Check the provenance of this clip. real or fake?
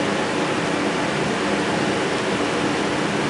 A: real